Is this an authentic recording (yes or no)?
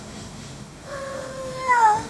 no